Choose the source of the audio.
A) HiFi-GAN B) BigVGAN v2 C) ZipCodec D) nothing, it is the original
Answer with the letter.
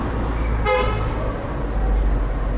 D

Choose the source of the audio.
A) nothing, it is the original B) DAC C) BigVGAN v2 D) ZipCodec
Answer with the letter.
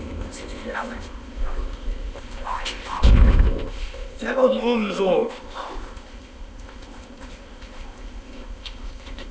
D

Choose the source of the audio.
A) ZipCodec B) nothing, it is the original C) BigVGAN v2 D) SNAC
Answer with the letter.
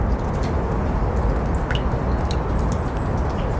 B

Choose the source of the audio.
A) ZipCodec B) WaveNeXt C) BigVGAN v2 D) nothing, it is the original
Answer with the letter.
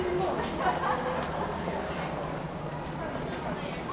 D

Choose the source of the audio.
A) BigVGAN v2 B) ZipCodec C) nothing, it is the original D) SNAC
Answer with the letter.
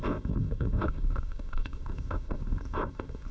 B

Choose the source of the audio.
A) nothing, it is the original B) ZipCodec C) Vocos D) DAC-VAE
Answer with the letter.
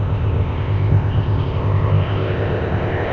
B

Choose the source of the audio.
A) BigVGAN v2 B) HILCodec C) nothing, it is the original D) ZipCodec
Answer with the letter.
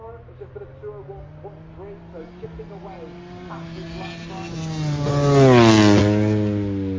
C